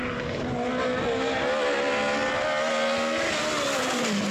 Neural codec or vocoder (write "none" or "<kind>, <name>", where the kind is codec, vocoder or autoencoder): none